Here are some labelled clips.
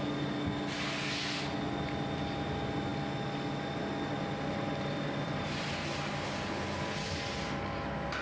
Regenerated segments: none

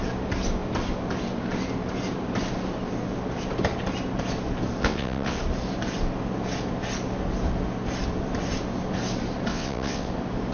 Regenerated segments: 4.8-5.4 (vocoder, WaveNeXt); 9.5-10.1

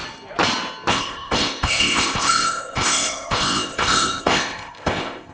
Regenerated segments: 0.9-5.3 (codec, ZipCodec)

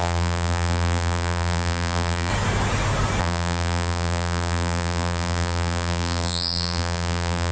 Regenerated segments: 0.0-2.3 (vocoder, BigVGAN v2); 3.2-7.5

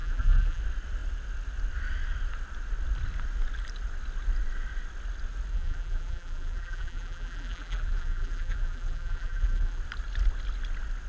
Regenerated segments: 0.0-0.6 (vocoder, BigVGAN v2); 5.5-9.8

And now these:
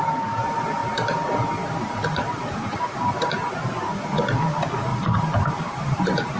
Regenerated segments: 0.0-6.4 (vocoder, BigVGAN v2)